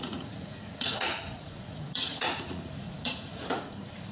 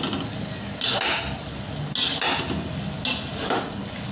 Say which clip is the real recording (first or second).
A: second